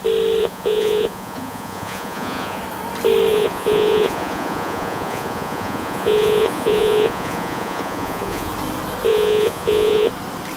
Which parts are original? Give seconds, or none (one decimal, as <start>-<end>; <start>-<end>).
0.0-0.4; 2.6-3.3; 8.5-9.1; 10.1-10.6